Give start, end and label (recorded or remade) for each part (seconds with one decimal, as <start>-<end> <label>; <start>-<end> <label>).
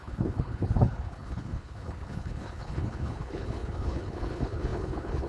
0.0-5.3 remade